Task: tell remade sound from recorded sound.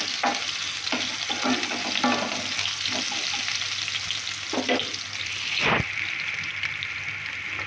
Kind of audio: recorded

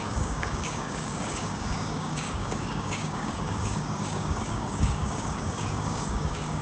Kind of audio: remade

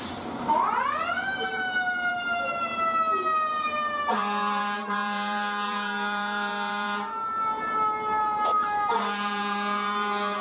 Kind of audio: remade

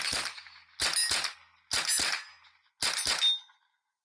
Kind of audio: recorded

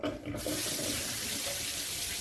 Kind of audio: recorded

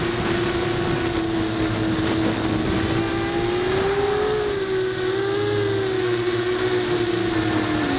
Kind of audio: recorded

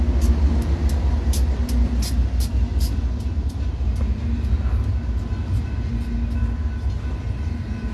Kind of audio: recorded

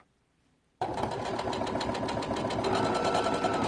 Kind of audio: recorded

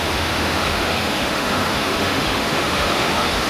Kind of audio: remade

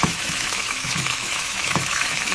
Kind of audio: remade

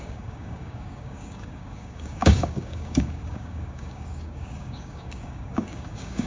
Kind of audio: remade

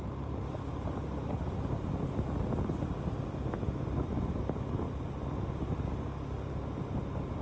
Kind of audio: recorded